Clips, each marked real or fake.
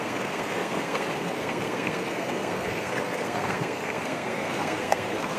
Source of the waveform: fake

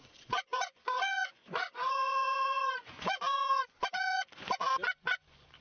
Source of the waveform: fake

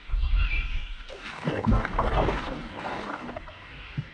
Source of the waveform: fake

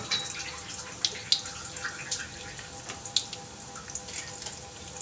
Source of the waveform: real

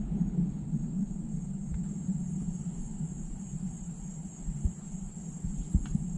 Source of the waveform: fake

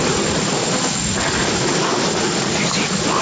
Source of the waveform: real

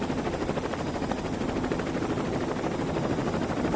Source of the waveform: real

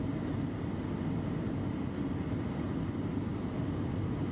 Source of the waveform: real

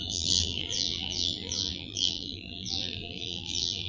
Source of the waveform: fake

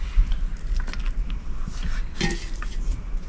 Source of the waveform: real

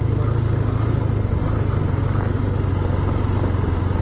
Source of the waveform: real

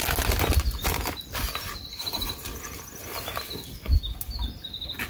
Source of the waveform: real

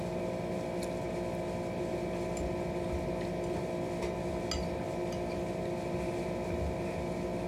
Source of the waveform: real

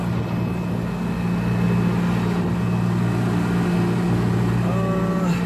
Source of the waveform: real